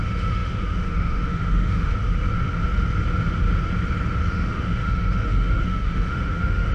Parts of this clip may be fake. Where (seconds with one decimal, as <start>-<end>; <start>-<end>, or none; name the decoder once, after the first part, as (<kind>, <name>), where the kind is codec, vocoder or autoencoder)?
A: 0.0-1.9 (autoencoder, DAC-VAE); 4.3-6.7